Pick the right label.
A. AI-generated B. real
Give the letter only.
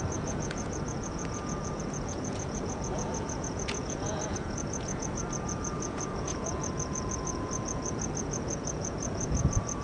A